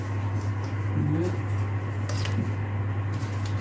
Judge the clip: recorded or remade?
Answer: recorded